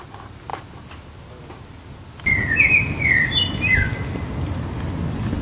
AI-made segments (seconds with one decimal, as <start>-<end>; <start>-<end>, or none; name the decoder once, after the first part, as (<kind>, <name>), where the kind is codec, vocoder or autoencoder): none